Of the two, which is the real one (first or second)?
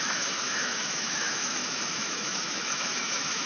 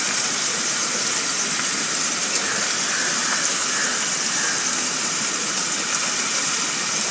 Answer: second